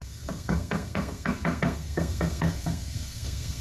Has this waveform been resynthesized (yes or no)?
yes